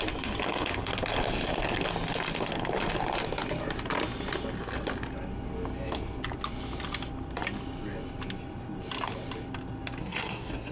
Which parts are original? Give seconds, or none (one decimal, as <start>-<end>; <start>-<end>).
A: 0.0-10.0